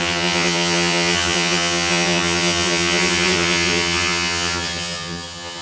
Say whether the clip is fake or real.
fake